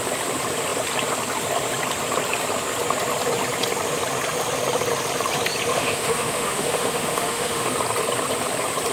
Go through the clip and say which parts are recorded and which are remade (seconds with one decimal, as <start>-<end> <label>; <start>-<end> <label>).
0.0-5.7 recorded; 5.7-7.7 remade; 7.7-8.9 recorded